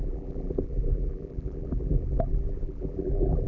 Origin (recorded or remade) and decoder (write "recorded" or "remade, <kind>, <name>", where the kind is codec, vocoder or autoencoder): remade, vocoder, BigVGAN v2